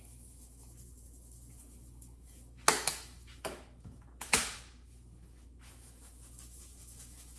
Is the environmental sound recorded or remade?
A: remade